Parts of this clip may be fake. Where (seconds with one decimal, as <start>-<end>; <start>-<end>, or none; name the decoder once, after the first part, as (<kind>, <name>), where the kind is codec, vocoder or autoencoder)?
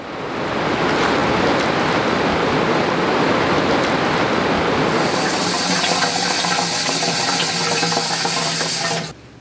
none